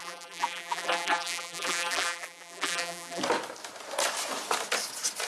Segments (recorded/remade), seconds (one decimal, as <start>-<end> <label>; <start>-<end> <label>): 0.0-3.2 remade; 3.2-5.3 recorded